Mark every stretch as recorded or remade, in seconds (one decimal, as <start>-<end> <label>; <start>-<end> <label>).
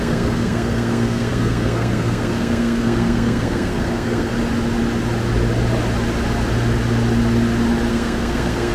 0.0-4.3 remade; 4.3-7.9 recorded; 7.9-8.7 remade